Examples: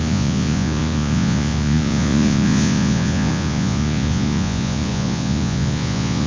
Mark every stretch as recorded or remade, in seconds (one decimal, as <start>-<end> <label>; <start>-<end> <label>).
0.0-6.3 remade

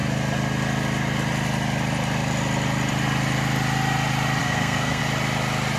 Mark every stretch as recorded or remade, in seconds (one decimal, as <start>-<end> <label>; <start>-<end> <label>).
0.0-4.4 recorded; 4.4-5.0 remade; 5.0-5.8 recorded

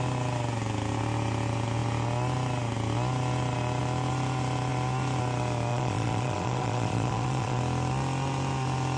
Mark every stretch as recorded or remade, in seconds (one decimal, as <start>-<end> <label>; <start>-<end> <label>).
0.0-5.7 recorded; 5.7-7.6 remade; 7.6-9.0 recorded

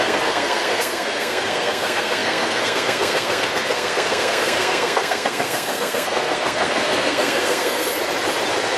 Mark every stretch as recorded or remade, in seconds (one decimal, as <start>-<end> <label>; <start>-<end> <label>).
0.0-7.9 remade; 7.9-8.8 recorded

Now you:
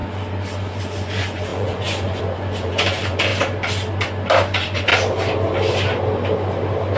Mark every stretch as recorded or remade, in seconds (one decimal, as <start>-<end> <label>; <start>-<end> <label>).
0.0-0.8 recorded; 0.8-3.3 remade; 3.3-4.5 recorded; 4.5-4.9 remade; 4.9-7.0 recorded

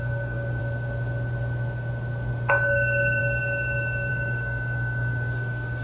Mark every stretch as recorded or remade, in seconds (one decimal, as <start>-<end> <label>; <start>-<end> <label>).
0.0-0.6 remade; 0.6-2.5 recorded; 2.5-3.2 remade; 3.2-4.1 recorded; 4.1-5.8 remade

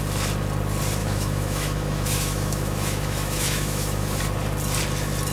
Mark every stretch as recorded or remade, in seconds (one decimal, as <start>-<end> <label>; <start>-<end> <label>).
0.0-1.0 recorded; 1.0-4.2 remade; 4.2-5.3 recorded

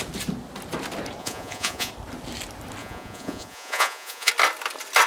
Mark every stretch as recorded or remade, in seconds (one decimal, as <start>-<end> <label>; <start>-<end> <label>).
0.0-1.2 recorded; 1.2-1.9 remade; 1.9-2.8 recorded; 2.8-4.3 remade; 4.3-5.1 recorded